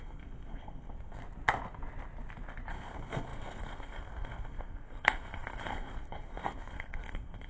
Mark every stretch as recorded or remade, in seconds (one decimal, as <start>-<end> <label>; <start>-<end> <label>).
0.0-1.2 remade; 1.2-2.7 recorded; 2.7-7.5 remade